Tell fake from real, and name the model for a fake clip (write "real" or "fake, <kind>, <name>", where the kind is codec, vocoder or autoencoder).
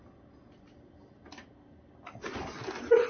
real